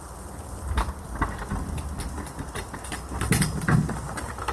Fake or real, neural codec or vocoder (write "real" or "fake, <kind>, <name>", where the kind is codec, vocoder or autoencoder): real